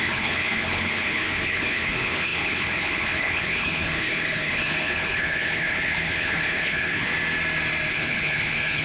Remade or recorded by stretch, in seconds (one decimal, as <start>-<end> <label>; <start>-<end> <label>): 0.0-7.1 remade; 7.1-7.9 recorded; 7.9-8.8 remade